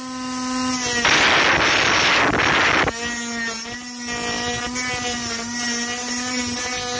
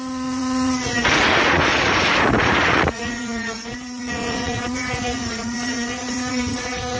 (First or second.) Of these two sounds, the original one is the first